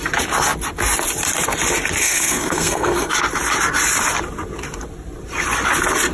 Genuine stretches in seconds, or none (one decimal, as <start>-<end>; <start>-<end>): 0.0-2.0; 3.1-6.1